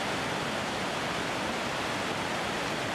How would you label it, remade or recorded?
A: recorded